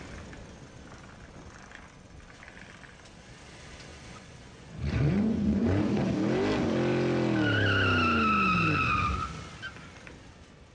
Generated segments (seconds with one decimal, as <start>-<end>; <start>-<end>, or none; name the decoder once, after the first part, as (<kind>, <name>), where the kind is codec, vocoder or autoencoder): 3.9-5.9 (vocoder, Vocos)